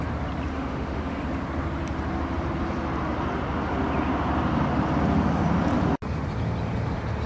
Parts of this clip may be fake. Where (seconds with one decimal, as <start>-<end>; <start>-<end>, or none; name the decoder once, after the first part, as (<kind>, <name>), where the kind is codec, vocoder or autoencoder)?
0.5-1.2 (autoencoder, DAC-VAE)